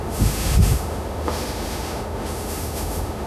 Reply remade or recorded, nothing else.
remade